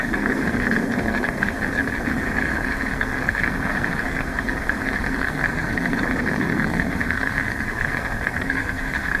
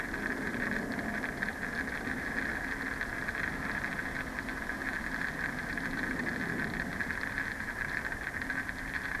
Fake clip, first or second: first